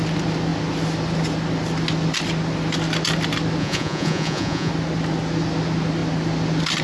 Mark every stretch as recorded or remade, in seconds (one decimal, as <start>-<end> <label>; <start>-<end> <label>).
0.0-3.6 recorded; 3.6-4.7 remade; 4.7-6.8 recorded